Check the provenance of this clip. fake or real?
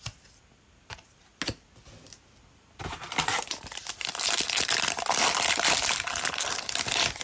real